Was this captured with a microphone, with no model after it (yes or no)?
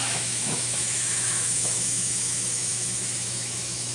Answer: no